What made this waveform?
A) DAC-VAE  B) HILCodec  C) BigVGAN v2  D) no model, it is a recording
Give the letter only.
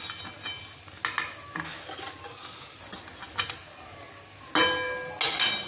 D